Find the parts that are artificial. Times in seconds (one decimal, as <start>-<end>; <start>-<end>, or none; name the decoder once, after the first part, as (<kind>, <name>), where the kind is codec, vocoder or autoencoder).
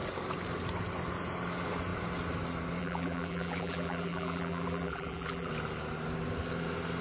2.8-5.5 (vocoder, BigVGAN v2)